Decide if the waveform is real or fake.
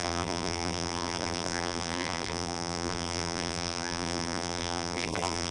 fake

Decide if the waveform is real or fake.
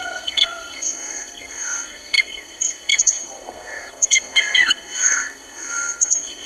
fake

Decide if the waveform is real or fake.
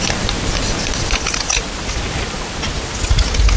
real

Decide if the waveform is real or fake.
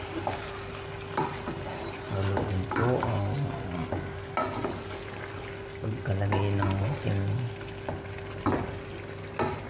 real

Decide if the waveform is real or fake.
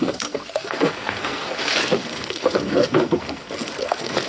fake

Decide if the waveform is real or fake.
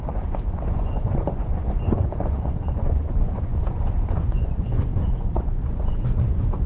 fake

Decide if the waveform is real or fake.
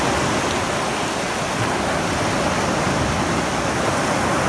real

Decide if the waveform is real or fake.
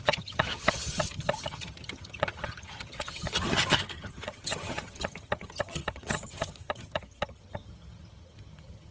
fake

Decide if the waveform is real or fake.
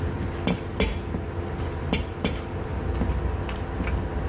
real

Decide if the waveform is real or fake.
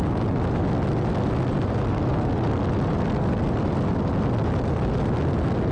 real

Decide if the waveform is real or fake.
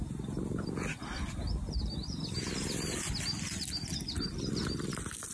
real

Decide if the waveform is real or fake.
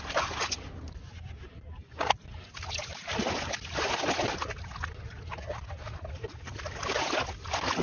real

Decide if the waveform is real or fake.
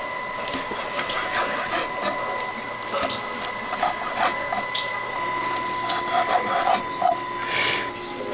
real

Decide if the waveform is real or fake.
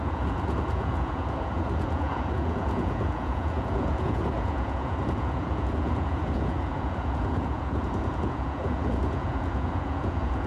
fake